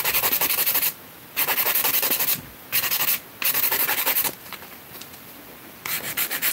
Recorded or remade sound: recorded